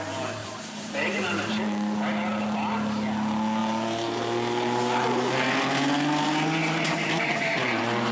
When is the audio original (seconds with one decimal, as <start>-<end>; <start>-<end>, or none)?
0.0-0.4; 1.5-3.6; 4.2-6.6